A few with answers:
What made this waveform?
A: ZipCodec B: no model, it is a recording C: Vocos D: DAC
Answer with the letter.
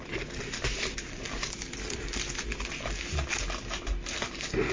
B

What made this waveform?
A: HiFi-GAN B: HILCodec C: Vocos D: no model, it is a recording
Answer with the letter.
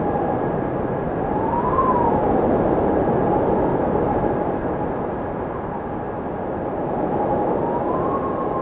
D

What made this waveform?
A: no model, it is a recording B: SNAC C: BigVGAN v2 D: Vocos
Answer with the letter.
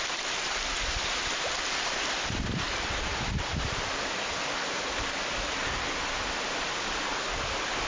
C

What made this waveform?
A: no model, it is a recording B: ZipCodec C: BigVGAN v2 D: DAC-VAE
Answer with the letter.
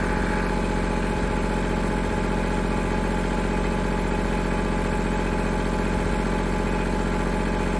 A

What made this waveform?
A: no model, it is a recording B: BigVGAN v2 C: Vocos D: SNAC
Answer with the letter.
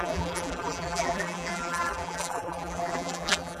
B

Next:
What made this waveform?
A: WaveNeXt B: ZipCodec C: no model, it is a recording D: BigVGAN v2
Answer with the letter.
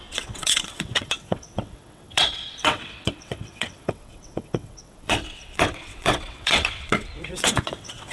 A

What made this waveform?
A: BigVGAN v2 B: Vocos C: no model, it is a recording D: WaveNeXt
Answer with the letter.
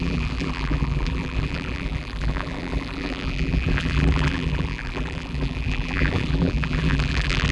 A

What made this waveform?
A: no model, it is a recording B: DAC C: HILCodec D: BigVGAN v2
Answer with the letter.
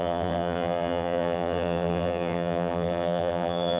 D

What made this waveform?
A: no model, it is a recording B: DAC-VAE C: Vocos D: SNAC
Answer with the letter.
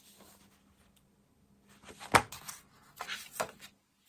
A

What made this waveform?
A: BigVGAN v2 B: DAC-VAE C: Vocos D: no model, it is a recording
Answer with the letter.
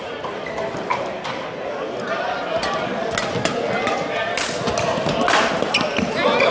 D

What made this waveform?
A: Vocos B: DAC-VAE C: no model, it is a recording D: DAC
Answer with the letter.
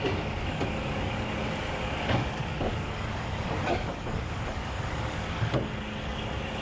D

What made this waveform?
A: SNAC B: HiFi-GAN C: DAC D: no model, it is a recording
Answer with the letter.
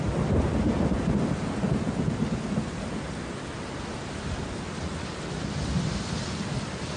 D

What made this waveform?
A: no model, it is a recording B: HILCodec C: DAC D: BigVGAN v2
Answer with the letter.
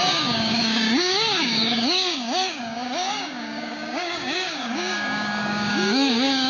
C